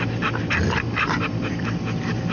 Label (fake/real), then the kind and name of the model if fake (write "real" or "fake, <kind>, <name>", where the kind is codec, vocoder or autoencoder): real